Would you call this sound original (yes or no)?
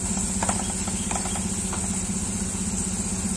yes